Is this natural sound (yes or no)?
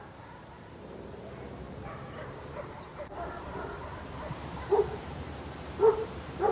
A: no